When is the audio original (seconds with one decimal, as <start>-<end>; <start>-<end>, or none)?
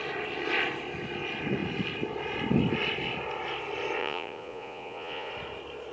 0.0-4.0; 5.3-5.9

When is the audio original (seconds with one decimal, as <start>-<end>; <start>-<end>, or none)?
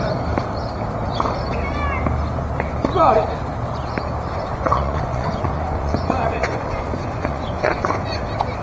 0.0-4.5; 8.2-8.6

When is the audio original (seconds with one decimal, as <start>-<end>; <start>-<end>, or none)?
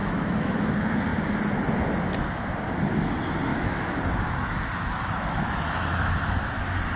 0.7-3.5; 6.2-7.0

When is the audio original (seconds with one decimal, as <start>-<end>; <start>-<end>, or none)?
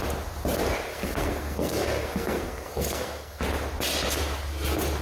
0.0-0.9; 3.4-5.0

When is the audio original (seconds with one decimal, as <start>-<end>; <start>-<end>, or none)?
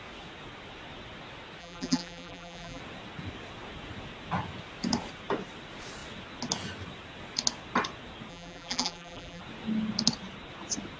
0.0-1.6; 2.8-8.3; 9.4-11.0